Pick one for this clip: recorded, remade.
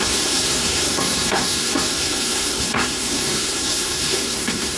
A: remade